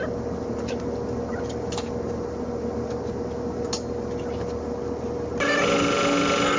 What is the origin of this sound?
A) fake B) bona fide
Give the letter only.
B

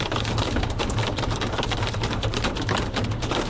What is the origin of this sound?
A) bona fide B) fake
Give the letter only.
B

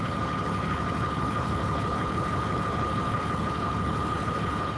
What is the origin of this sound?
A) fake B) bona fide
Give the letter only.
A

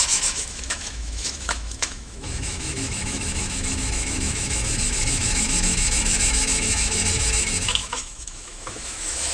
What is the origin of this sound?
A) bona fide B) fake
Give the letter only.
B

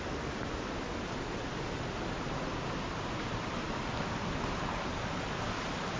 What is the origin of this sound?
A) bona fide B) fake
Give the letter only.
A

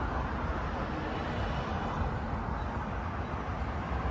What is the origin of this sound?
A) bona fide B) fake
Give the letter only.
A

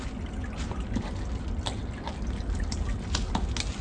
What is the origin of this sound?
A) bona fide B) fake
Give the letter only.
A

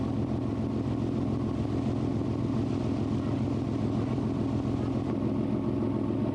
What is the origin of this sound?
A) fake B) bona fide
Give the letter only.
B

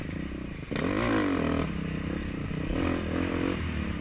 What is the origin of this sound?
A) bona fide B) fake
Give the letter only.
A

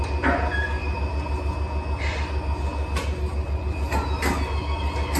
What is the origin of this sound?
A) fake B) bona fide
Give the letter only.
B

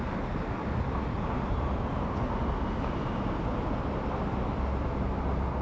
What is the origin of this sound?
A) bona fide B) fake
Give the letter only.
A